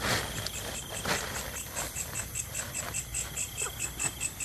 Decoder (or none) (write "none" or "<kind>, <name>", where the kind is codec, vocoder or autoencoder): none